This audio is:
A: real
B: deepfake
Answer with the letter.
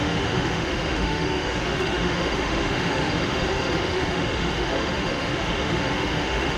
B